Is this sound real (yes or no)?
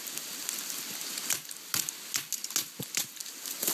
yes